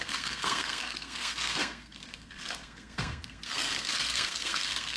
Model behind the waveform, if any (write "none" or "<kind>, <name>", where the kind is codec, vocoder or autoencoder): codec, SNAC